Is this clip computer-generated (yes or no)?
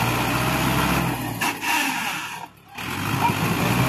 no